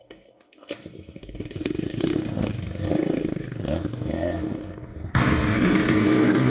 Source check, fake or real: fake